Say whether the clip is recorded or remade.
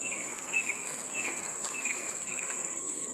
remade